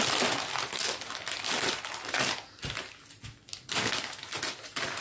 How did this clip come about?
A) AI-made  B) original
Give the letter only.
B